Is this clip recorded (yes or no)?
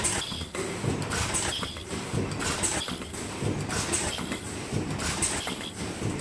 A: yes